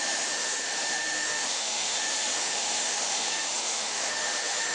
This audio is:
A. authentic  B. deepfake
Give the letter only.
B